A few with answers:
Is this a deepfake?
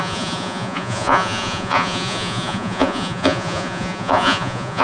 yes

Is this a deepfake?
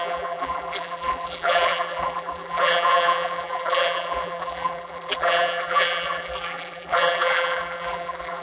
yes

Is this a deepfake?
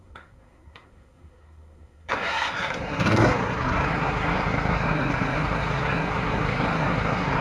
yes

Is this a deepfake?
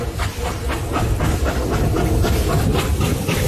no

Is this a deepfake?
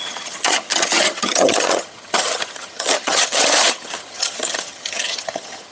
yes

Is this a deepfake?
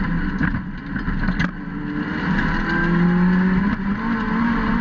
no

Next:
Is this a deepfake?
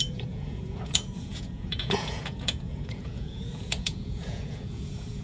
yes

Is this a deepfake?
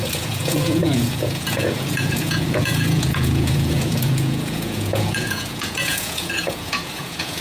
yes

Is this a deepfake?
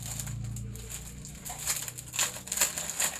no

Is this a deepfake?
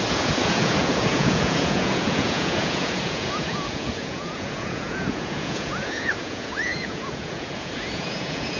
yes